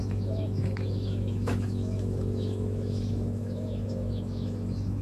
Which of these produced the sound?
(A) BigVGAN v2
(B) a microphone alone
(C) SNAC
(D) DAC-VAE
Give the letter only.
D